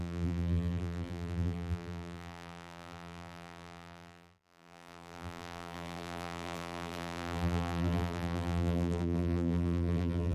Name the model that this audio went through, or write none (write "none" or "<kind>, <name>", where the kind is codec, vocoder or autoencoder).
vocoder, BigVGAN v2